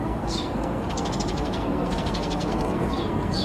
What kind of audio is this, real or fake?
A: fake